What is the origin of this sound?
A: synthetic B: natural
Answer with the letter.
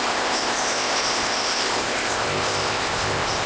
A